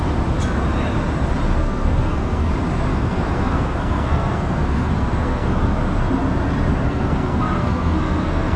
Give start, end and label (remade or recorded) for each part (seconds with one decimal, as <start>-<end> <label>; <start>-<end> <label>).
0.0-1.6 recorded; 1.6-2.5 remade; 2.5-2.9 recorded; 2.9-5.6 remade; 5.6-6.7 recorded; 6.7-8.6 remade